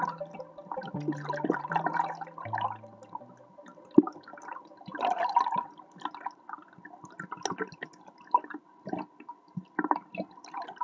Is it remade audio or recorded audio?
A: recorded